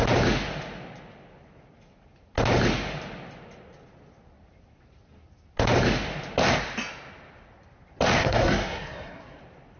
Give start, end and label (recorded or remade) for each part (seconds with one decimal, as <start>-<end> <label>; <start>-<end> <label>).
0.0-8.2 recorded; 8.2-9.4 remade; 9.4-9.8 recorded